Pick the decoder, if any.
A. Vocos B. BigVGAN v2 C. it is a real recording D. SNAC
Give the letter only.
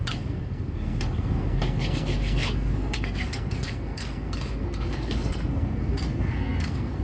D